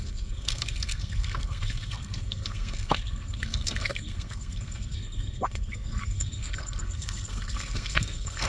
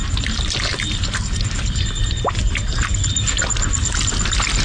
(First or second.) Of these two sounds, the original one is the second